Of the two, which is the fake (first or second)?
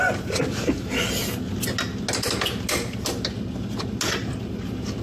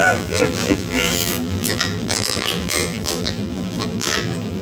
second